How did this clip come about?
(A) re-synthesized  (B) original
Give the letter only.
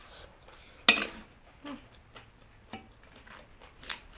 B